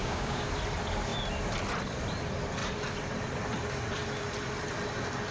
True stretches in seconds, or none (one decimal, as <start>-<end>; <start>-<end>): 0.5-5.3